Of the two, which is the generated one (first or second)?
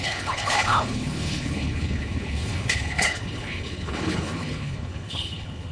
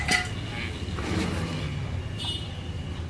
first